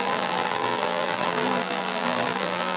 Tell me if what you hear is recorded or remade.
remade